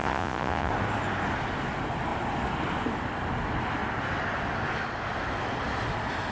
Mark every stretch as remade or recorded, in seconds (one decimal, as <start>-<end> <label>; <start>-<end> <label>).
0.0-0.7 remade; 0.7-6.3 recorded